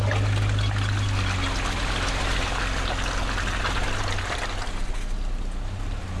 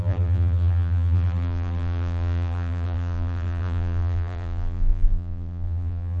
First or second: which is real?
first